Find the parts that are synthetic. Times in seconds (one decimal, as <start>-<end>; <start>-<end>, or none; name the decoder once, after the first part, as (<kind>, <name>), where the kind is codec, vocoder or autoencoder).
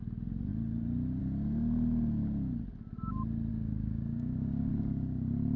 3.5-4.7 (codec, DAC)